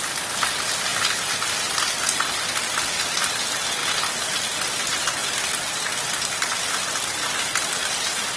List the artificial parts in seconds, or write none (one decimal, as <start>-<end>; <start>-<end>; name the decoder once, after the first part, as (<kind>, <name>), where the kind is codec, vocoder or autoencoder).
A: none